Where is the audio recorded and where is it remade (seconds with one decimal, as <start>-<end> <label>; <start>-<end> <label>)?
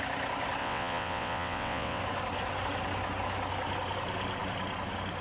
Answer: 0.0-0.6 recorded; 0.6-2.0 remade; 2.0-5.2 recorded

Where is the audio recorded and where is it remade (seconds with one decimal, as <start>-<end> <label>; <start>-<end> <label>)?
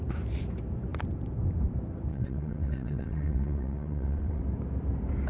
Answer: 0.0-2.1 recorded; 2.1-4.4 remade; 4.4-5.3 recorded